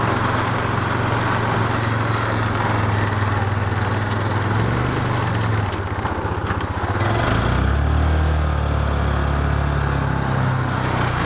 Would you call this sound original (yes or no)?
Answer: yes